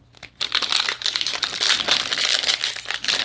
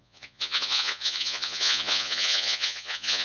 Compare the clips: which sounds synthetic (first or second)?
second